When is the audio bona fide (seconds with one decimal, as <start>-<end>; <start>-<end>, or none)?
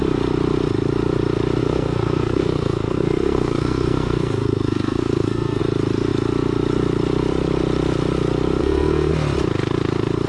0.0-1.6; 5.6-8.6; 9.1-10.3